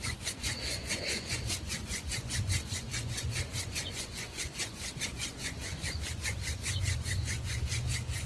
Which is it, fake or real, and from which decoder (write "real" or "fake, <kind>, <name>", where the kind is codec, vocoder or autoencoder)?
fake, vocoder, Vocos